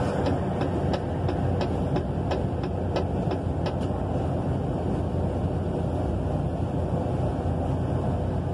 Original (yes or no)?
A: yes